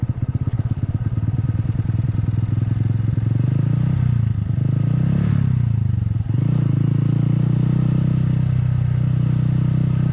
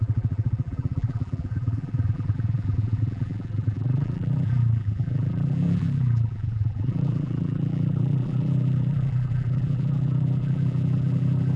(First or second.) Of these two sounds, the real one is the first